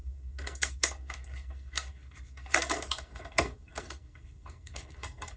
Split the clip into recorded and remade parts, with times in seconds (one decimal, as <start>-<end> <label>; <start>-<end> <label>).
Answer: 0.0-5.4 remade